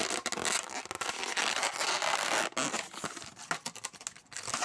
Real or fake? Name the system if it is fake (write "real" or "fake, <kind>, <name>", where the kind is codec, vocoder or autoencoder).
real